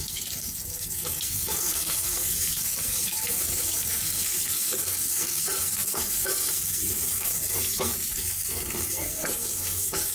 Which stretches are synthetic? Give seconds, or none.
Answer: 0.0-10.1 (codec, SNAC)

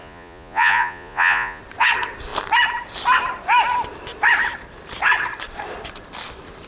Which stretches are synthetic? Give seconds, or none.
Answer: 0.0-1.6 (vocoder, Vocos)